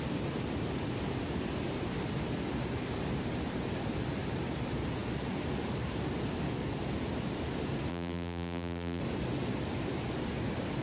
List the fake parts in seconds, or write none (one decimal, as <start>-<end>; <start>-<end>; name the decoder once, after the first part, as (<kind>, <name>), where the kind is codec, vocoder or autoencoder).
7.9-9.0 (vocoder, BigVGAN v2)